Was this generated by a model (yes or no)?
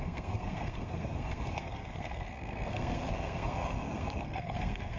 yes